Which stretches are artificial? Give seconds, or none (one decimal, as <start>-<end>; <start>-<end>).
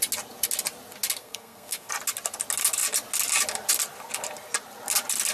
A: 1.2-1.9